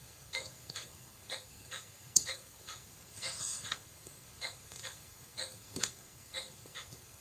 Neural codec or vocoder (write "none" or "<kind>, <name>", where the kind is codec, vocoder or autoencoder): codec, SNAC